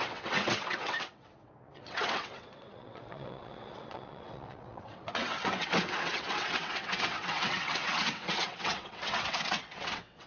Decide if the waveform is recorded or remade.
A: remade